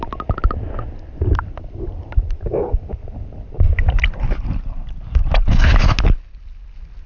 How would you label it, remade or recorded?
recorded